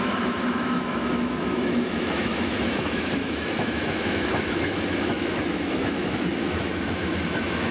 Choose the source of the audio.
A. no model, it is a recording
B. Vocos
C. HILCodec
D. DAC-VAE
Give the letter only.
D